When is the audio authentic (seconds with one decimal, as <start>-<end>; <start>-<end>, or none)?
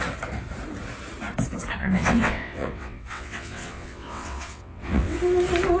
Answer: 0.0-1.8; 5.2-5.8